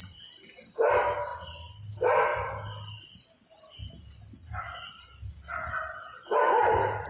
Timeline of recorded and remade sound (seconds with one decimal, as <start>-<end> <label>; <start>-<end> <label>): 0.0-7.1 recorded